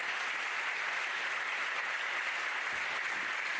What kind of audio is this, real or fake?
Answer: real